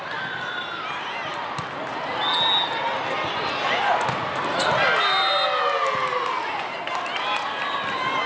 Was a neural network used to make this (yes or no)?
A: no